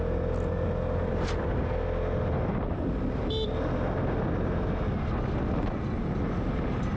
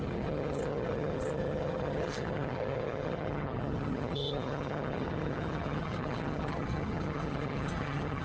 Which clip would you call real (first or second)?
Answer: first